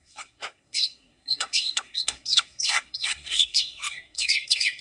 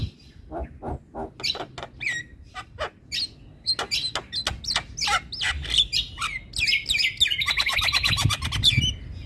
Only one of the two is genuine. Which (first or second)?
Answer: second